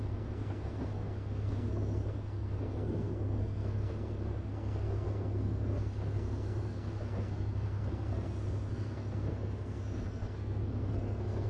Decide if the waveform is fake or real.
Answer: fake